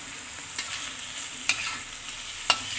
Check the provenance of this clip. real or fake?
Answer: real